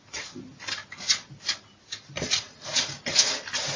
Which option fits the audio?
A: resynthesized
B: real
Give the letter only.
B